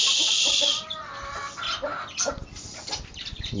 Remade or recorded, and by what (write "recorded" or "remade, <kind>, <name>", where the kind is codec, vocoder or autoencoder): recorded